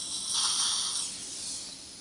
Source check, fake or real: real